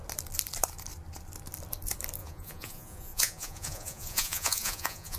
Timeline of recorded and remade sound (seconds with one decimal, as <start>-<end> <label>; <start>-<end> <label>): 0.0-2.2 recorded; 2.2-5.2 remade